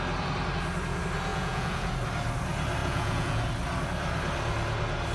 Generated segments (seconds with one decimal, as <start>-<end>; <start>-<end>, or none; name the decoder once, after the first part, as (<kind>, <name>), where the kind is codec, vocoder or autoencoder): 1.3-1.9 (vocoder, Vocos); 2.8-3.4